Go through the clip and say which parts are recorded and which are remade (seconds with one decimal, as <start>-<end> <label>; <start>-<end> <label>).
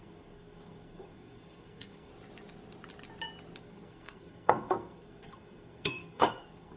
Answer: 0.0-2.1 remade; 2.1-3.6 recorded; 3.6-6.8 remade